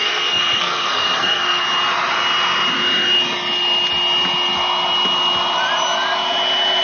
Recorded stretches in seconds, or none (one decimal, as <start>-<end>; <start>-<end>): 1.6-6.8